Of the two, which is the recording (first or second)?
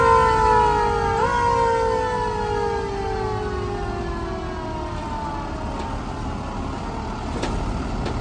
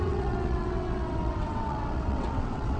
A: first